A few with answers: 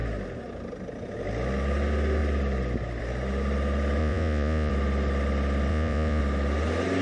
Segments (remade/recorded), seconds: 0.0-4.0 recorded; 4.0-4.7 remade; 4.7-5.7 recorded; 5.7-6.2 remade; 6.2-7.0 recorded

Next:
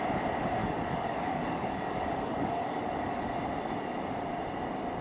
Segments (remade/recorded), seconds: 0.0-0.6 recorded; 0.6-3.2 remade; 3.2-5.0 recorded

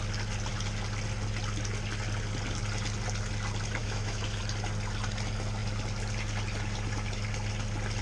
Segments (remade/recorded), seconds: 0.0-3.8 recorded; 3.8-4.4 remade; 4.4-8.0 recorded

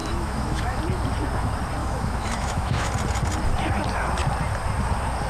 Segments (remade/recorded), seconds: 0.0-0.8 remade; 0.8-1.8 recorded; 1.8-2.9 remade; 2.9-5.3 recorded

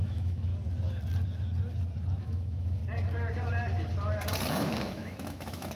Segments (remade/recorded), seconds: 0.0-0.5 remade; 0.5-2.2 recorded; 2.2-2.8 remade; 2.8-4.5 recorded; 4.5-5.8 remade

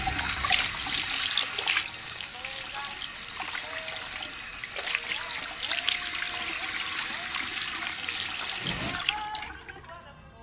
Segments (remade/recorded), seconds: 0.0-2.0 recorded; 2.0-2.6 remade; 2.6-10.4 recorded

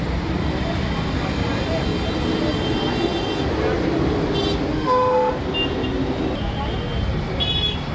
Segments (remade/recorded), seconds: 0.0-4.7 recorded; 4.7-5.3 remade; 5.3-7.9 recorded

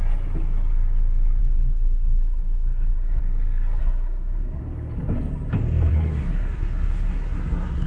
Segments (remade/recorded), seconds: 0.0-1.4 recorded; 1.4-3.2 remade; 3.2-3.8 recorded; 3.8-4.6 remade; 4.6-5.9 recorded; 5.9-7.9 remade